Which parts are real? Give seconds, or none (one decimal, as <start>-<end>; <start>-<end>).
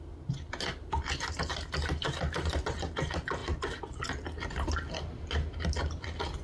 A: 0.0-6.4